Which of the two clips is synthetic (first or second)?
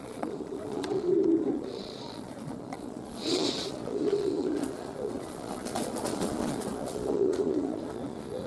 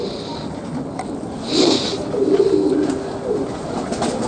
first